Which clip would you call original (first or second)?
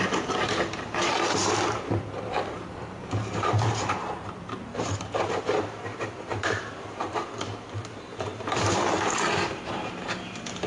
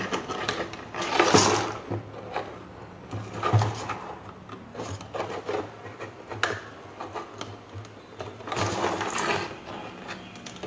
second